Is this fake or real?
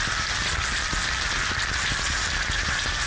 real